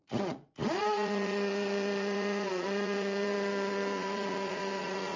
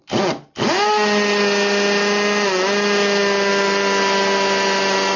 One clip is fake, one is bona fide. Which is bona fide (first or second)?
second